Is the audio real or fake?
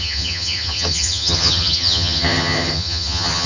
fake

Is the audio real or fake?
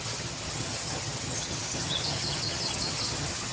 fake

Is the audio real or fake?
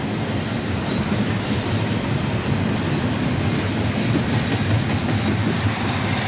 real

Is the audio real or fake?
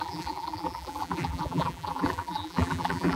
fake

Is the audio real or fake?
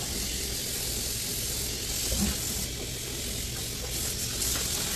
real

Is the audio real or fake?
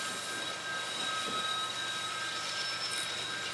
real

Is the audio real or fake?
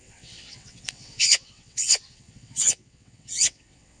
fake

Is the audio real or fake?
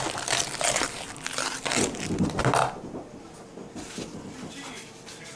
real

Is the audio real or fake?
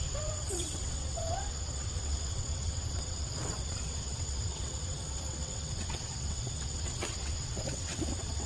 fake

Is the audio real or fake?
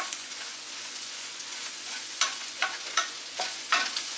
fake